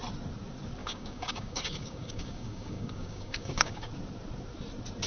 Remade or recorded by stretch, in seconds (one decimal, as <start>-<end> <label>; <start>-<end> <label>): 0.0-0.8 recorded; 0.8-3.9 remade; 3.9-5.1 recorded